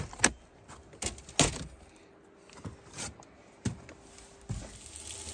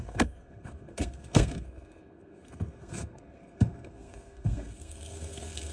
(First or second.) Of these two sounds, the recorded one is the first